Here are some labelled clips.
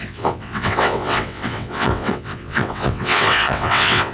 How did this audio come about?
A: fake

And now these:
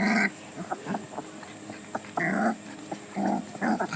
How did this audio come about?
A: real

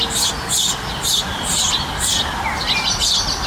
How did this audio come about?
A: real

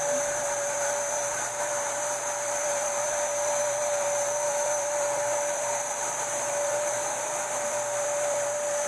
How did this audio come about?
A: fake